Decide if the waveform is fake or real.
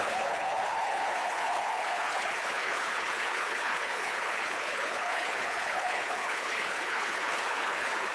fake